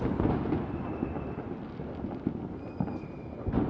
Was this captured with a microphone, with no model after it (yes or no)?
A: yes